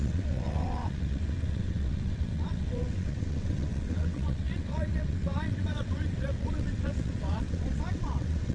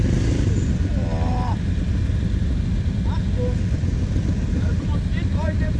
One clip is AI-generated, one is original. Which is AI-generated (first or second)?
first